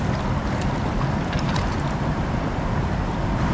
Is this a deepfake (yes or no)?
no